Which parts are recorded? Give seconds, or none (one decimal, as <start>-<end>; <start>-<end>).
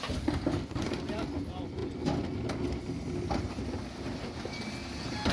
0.0-5.3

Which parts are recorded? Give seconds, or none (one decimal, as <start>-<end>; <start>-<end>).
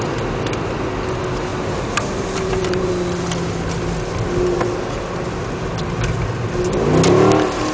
0.0-1.5; 2.9-7.7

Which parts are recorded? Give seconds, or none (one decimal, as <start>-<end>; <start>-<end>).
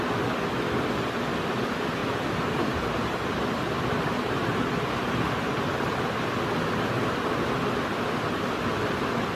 0.0-2.0; 6.3-9.3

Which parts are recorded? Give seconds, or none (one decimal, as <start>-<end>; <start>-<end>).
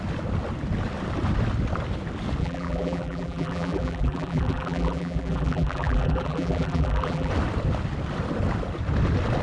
0.0-2.4; 7.3-9.4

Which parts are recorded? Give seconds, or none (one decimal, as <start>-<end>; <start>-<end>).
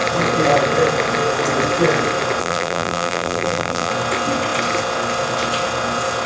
0.0-2.4; 3.9-6.3